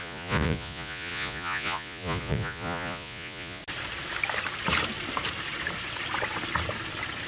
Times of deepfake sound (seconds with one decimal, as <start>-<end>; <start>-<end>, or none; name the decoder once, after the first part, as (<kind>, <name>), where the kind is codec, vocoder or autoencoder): 0.0-3.6 (vocoder, Vocos)